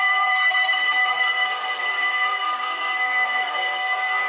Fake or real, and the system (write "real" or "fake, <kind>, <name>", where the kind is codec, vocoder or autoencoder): fake, codec, SNAC